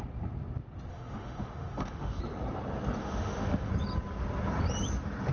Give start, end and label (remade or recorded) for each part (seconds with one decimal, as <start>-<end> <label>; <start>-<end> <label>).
0.0-0.9 recorded; 0.9-2.2 remade; 2.2-3.0 recorded; 3.0-3.7 remade; 3.7-5.3 recorded